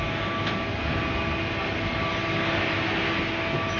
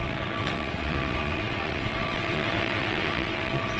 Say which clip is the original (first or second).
first